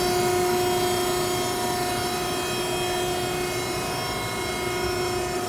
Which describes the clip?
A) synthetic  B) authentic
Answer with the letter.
B